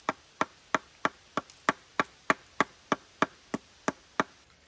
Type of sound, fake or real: real